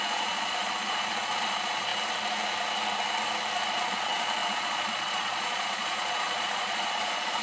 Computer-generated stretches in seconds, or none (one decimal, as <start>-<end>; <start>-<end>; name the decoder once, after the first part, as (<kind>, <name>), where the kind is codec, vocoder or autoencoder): 0.0-1.9 (vocoder, Vocos); 3.7-7.4